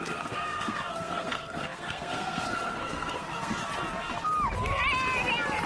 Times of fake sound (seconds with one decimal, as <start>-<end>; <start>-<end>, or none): 0.0-3.5